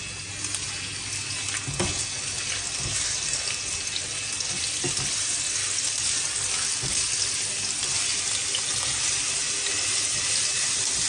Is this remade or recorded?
recorded